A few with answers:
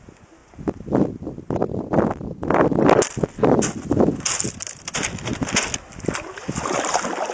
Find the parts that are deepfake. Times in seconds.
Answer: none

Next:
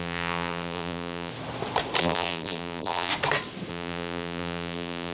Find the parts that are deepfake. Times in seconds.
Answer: 0.0-1.3 (vocoder, BigVGAN v2); 2.0-3.1; 3.7-5.1